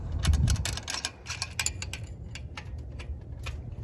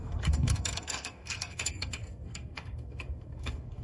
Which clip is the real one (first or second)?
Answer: first